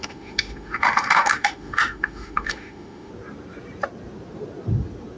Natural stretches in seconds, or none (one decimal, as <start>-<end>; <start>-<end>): 3.1-5.2